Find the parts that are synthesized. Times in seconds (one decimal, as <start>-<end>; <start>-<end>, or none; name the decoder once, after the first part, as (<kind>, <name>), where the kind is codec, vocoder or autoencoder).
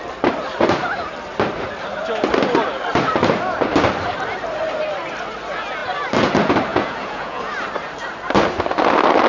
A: 6.7-7.5 (vocoder, Vocos)